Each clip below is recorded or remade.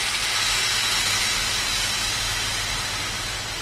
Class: recorded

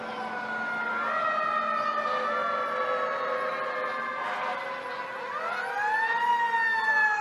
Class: recorded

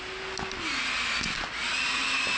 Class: recorded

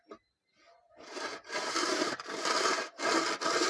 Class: recorded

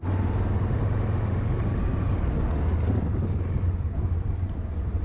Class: recorded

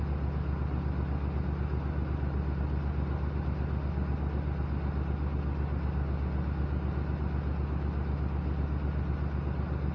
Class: recorded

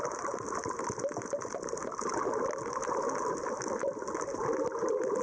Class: recorded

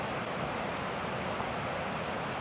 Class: recorded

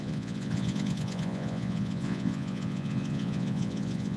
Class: remade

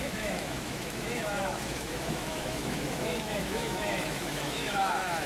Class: remade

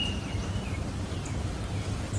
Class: recorded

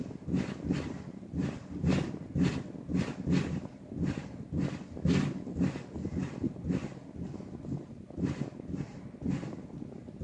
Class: recorded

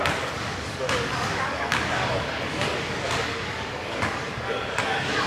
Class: remade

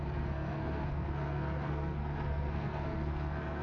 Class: remade